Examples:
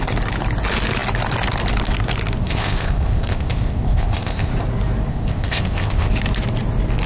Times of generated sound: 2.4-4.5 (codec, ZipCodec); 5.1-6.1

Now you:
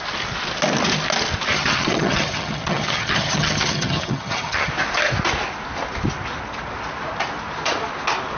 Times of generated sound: 1.5-4.7 (vocoder, HiFi-GAN)

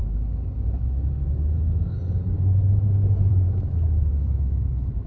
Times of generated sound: 3.3-5.1 (autoencoder, DAC-VAE)

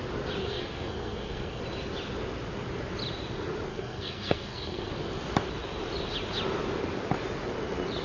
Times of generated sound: 0.4-1.6 (codec, SNAC); 3.7-4.9

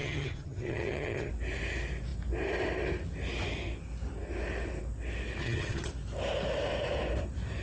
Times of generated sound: 0.0-1.3 (vocoder, HiFi-GAN); 5.4-5.9

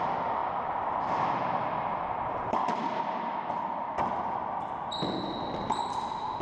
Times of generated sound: none

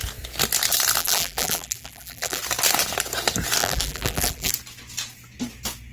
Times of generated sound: 1.0-2.4 (vocoder, BigVGAN v2); 3.6-4.5

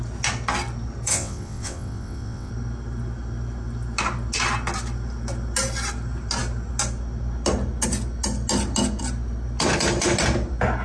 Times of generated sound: 1.1-2.5 (vocoder, WaveNeXt)